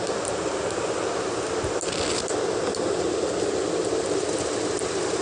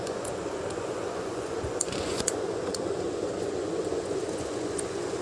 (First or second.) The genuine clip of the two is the first